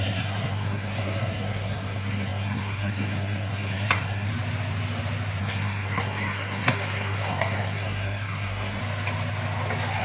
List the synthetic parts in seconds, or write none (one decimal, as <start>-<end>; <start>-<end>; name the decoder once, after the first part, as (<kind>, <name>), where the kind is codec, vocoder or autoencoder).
0.0-4.3 (codec, SNAC); 5.4-8.8